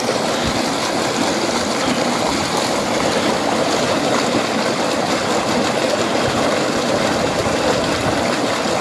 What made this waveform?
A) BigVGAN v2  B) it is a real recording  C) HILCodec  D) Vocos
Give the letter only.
B